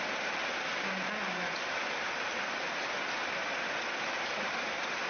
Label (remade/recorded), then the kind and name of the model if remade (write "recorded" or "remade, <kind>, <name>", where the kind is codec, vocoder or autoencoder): recorded